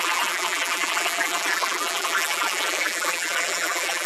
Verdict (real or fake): fake